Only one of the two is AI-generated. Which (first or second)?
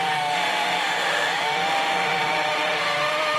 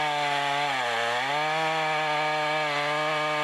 first